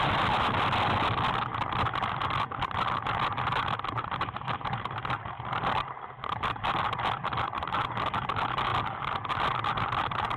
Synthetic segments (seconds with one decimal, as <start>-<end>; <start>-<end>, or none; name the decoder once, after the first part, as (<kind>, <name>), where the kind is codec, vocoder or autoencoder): none